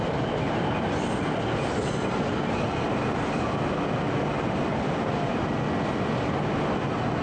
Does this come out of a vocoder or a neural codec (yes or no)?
no